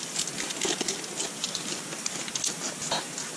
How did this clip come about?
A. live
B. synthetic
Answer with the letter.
A